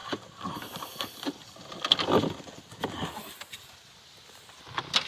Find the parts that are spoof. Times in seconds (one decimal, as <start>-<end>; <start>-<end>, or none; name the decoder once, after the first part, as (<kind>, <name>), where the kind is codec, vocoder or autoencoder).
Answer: none